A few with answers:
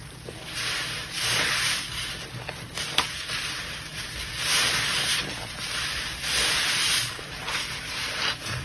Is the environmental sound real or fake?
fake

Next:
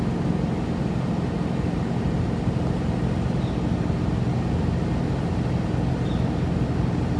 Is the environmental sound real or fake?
real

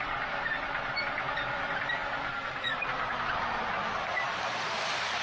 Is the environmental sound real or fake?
real